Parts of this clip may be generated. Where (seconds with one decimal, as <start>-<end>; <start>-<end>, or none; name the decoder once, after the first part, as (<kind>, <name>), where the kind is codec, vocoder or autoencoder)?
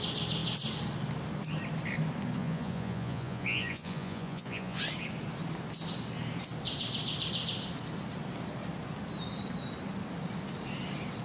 2.4-4.8 (vocoder, Vocos)